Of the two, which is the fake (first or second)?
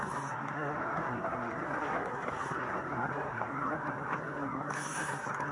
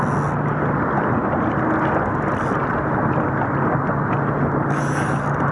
first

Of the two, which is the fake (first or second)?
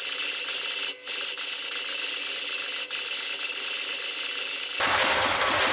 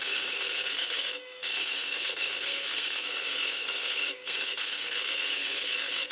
second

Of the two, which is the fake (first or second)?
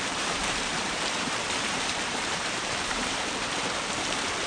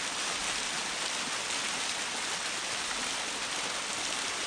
first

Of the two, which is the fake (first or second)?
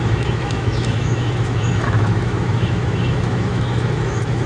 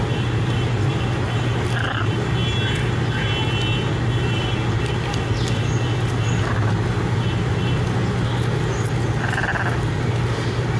first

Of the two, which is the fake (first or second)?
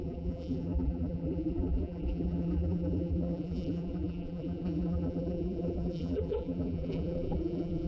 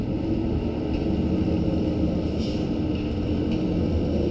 first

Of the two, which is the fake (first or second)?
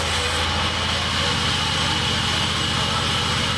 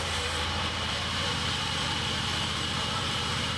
second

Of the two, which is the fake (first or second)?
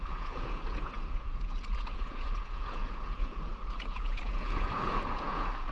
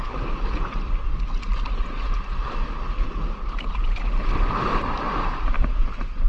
first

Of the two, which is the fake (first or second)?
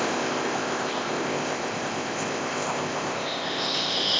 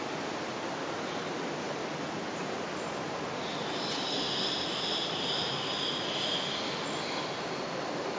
first